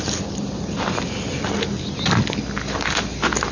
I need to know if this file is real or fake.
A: real